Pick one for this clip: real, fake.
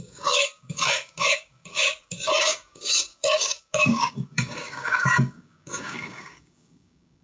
fake